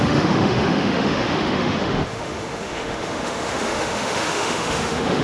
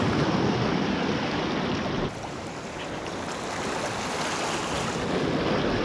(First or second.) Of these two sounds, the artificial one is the first